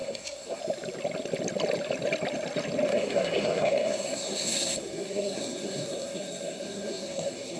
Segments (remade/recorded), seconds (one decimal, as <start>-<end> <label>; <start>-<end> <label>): 0.0-0.6 remade; 0.6-2.9 recorded; 2.9-7.6 remade